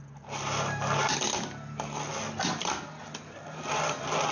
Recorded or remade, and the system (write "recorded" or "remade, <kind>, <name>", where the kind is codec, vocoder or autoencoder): recorded